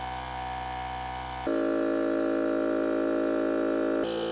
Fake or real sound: real